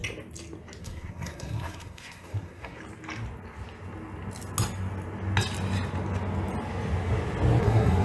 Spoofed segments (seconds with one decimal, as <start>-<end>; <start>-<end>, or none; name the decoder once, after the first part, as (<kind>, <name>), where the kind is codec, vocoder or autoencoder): 0.8-2.8 (codec, SNAC); 7.6-8.0